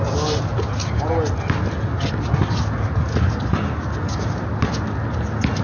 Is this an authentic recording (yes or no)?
yes